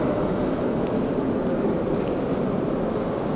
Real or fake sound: real